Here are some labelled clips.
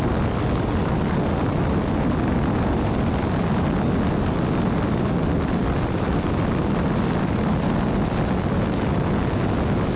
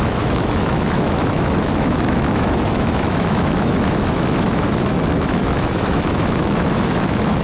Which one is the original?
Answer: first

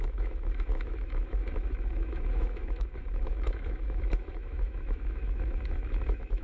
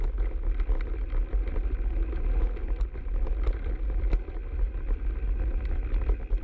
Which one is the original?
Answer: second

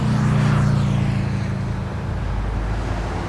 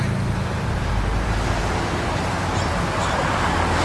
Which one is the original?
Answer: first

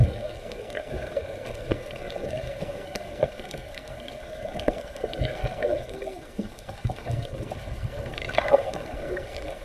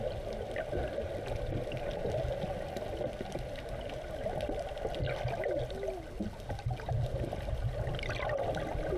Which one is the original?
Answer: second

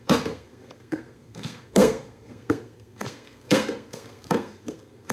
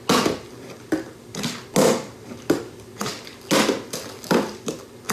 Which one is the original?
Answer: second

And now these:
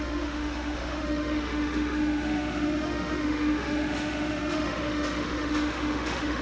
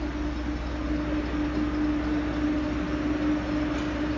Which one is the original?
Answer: second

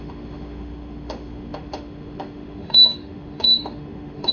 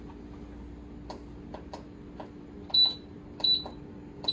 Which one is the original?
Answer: second